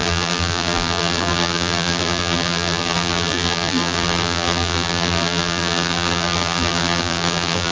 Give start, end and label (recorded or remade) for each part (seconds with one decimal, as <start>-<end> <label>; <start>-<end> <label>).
0.0-7.7 remade

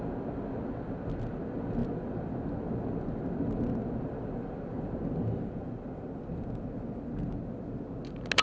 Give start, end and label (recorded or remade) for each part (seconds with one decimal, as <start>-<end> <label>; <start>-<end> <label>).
0.0-8.4 recorded